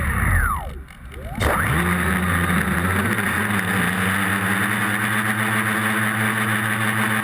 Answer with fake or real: real